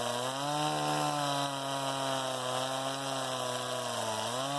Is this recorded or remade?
recorded